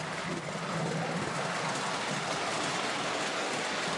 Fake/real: real